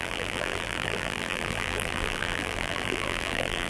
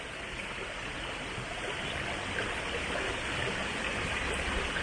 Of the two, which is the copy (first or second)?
first